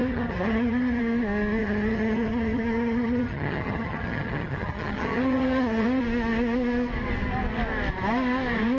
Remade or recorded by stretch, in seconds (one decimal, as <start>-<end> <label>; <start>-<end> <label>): 0.0-1.0 remade; 1.0-1.6 recorded; 1.6-6.0 remade; 6.0-8.8 recorded